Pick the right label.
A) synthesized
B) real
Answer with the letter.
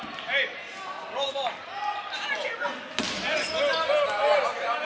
B